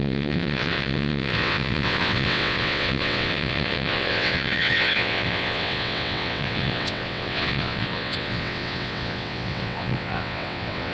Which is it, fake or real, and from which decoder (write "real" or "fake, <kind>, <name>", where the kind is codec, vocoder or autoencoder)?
fake, vocoder, WaveNeXt